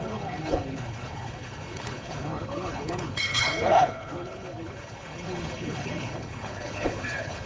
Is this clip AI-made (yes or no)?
yes